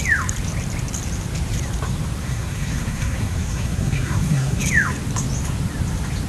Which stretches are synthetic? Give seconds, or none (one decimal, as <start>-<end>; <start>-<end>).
2.2-4.6